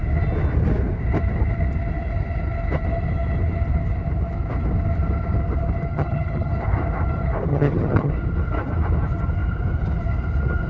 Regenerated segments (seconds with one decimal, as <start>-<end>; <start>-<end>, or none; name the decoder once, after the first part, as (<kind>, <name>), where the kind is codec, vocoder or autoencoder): 5.9-6.5 (vocoder, HiFi-GAN); 7.5-8.1